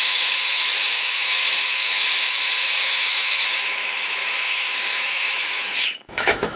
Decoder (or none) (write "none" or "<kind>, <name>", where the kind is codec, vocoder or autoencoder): autoencoder, DAC-VAE